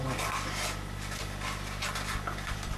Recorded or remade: recorded